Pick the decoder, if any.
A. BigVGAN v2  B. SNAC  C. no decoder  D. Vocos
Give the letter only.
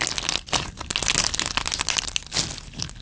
C